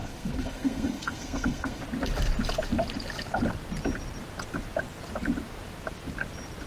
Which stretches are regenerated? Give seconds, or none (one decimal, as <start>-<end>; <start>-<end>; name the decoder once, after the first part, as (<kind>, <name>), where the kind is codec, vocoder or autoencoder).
0.0-1.8 (codec, SNAC)